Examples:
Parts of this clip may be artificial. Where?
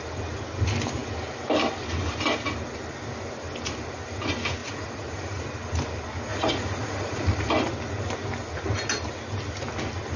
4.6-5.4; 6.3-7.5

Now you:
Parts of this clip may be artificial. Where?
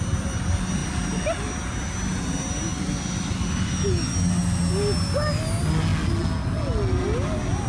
none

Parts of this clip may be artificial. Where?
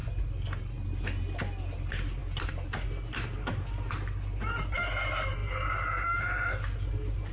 none